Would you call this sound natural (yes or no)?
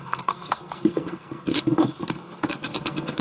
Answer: no